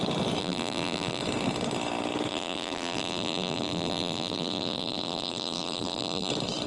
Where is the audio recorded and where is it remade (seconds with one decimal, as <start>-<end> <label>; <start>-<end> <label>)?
0.0-0.4 recorded; 0.4-1.2 remade; 1.2-2.3 recorded; 2.3-6.3 remade; 6.3-6.7 recorded